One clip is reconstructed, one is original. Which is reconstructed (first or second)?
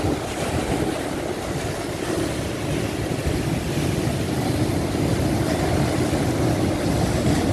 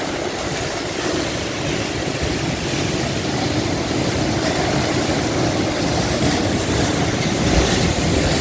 second